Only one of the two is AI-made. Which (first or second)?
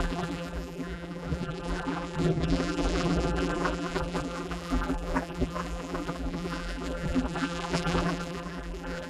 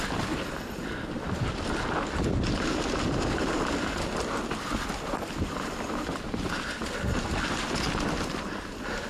first